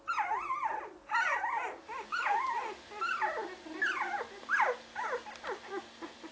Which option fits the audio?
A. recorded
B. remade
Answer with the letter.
A